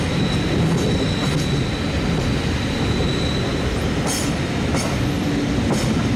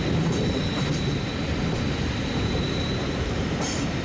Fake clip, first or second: second